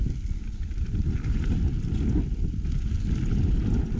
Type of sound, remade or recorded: recorded